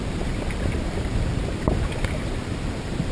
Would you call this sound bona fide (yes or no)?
no